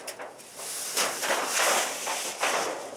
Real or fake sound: fake